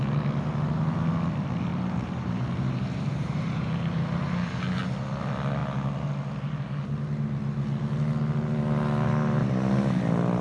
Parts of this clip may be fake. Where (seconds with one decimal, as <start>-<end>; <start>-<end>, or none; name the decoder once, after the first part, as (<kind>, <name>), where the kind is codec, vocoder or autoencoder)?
1.7-4.5 (vocoder, BigVGAN v2)